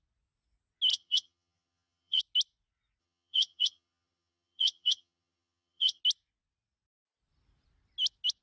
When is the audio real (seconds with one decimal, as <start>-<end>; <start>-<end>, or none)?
0.0-0.9; 2.2-3.0; 6.0-8.4